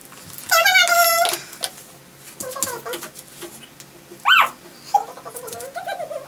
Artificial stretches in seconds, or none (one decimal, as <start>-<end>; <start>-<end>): none